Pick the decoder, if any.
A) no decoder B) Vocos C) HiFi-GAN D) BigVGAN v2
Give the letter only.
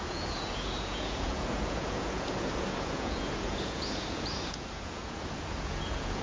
B